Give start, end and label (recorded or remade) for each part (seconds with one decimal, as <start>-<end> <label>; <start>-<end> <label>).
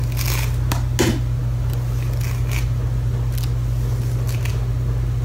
0.0-5.2 recorded